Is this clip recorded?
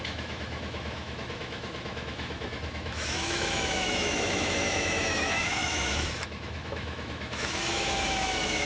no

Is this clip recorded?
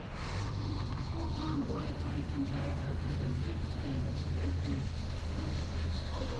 no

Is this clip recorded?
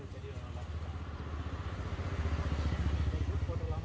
yes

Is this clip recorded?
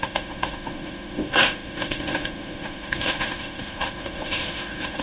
no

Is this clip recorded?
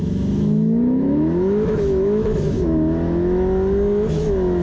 no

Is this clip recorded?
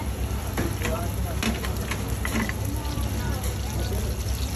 yes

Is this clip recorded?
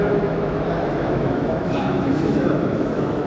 no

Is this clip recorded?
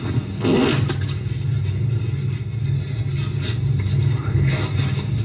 yes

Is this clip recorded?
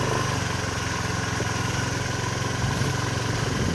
yes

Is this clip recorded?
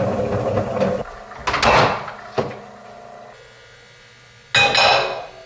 yes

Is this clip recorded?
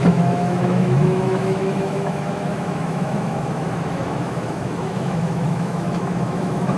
no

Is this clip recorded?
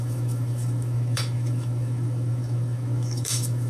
no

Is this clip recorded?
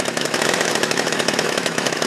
no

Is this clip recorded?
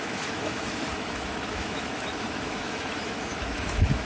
no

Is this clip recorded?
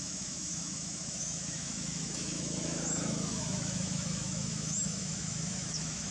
no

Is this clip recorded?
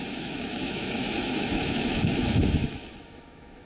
no